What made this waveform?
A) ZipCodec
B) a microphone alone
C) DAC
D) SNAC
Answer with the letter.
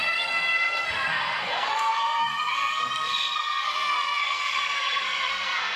D